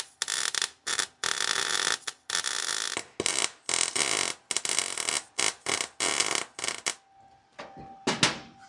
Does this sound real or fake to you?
real